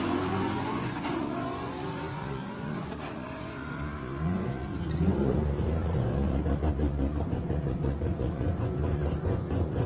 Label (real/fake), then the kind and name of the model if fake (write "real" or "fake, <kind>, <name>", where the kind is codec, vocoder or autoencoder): fake, vocoder, Vocos